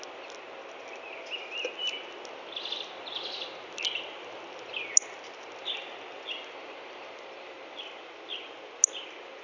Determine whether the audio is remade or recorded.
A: recorded